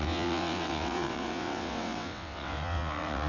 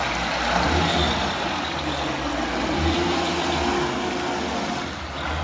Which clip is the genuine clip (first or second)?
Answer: second